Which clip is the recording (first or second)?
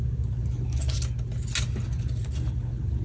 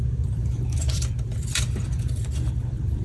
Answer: first